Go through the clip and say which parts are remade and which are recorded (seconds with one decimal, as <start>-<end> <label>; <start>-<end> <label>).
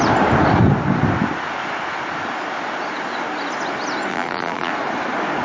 0.0-4.1 recorded; 4.1-4.7 remade; 4.7-5.4 recorded